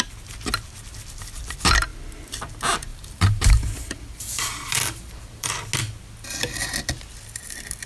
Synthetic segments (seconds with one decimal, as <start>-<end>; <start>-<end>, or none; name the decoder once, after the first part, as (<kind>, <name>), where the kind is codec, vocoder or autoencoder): 2.9-5.5 (vocoder, BigVGAN v2)